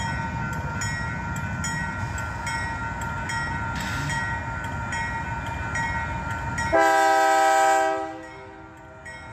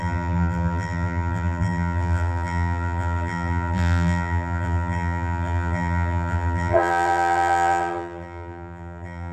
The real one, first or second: first